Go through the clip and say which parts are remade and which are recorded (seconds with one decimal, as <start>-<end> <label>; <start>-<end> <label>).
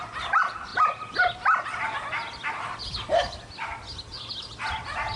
0.0-5.2 recorded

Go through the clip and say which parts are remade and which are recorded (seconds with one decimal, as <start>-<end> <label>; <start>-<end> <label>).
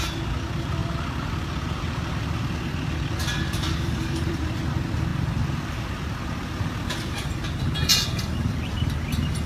0.0-3.3 recorded; 3.3-4.5 remade; 4.5-9.5 recorded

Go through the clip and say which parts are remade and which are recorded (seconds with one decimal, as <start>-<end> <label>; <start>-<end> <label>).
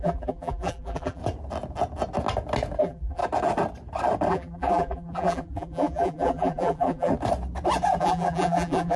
0.0-1.2 remade; 1.2-2.8 recorded; 2.8-3.2 remade; 3.2-4.3 recorded; 4.3-7.1 remade; 7.1-8.0 recorded; 8.0-9.0 remade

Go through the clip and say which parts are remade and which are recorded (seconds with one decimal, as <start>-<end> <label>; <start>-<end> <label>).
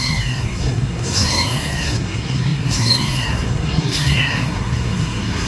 0.0-5.5 remade